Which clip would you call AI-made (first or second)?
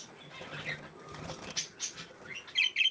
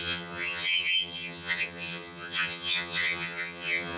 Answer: second